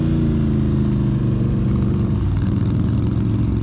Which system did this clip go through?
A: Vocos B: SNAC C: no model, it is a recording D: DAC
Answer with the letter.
C